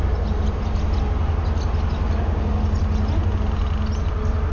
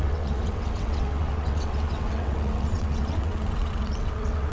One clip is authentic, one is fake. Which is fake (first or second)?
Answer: second